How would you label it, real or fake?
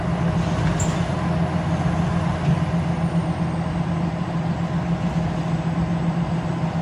real